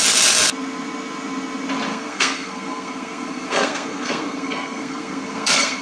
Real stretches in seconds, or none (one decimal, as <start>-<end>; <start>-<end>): 0.0-1.9